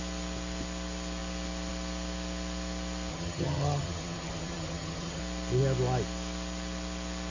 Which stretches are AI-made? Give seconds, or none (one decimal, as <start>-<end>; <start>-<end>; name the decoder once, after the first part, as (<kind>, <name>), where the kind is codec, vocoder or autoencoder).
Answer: 3.1-5.2 (vocoder, HiFi-GAN)